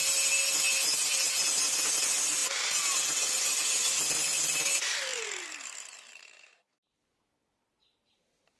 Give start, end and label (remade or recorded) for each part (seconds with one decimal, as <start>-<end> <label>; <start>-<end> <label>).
0.0-8.6 recorded